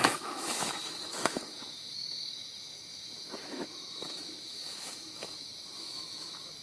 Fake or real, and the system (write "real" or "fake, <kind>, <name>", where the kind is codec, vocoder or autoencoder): fake, autoencoder, DAC-VAE